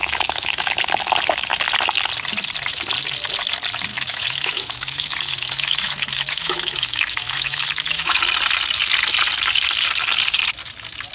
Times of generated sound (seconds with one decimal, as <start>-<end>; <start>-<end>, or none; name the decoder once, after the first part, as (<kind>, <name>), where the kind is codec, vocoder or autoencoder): 0.0-0.8 (autoencoder, DAC-VAE); 3.9-8.2